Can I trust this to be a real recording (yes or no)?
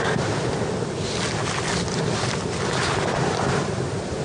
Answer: no